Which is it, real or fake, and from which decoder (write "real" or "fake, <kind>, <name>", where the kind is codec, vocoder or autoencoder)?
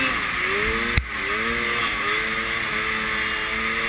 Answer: real